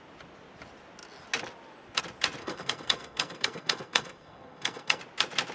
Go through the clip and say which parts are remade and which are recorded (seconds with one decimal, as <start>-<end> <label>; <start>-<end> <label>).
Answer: 0.0-2.4 recorded; 2.4-5.0 remade; 5.0-5.5 recorded